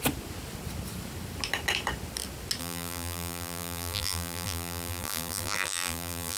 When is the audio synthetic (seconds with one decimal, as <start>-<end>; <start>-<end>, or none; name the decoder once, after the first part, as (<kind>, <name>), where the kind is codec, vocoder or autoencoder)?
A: 2.6-6.4 (vocoder, BigVGAN v2)